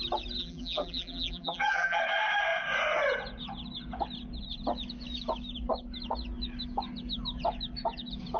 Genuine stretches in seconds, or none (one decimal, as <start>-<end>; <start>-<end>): 0.0-0.4; 2.0-8.4